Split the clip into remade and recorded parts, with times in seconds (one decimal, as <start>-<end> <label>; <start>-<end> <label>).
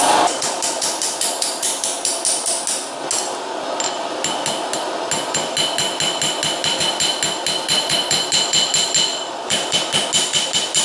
0.0-9.1 recorded; 9.1-9.8 remade; 9.8-10.8 recorded